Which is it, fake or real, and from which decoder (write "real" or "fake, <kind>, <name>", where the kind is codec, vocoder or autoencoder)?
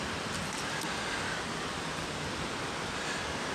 real